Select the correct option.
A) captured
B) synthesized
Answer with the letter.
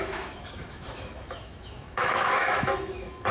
B